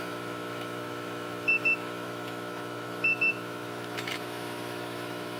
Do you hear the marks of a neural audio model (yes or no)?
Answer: yes